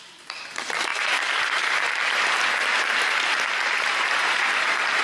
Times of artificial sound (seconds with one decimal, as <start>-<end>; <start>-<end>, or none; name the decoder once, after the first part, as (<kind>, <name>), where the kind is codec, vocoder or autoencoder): 0.0-5.0 (vocoder, BigVGAN v2)